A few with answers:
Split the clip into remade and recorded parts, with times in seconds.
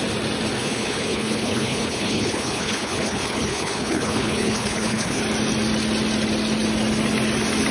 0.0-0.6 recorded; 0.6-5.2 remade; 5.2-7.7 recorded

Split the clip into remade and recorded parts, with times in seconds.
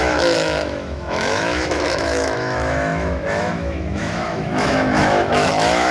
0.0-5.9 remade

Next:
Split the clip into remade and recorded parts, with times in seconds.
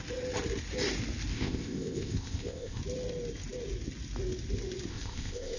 0.0-1.3 recorded; 1.3-2.8 remade; 2.8-4.9 recorded; 4.9-5.6 remade